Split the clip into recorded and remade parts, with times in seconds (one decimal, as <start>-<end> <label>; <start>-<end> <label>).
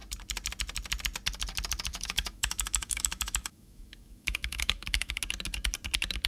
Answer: 0.0-1.9 recorded; 1.9-5.2 remade; 5.2-6.3 recorded